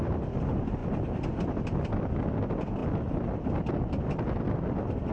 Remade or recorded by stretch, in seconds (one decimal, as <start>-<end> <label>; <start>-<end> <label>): 0.0-5.1 recorded